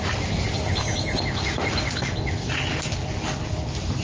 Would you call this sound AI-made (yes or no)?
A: no